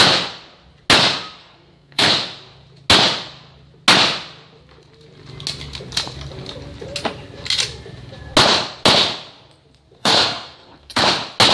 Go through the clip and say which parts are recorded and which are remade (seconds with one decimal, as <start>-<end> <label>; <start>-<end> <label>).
0.0-1.4 recorded; 1.4-2.1 remade; 2.1-10.0 recorded; 10.0-11.0 remade; 11.0-11.5 recorded